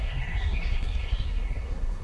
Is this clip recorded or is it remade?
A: remade